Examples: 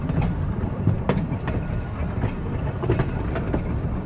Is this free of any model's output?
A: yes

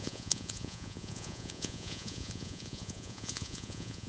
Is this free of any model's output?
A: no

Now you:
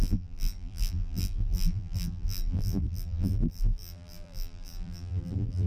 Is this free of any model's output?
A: no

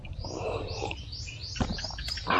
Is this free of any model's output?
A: yes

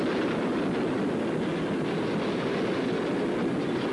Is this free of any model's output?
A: yes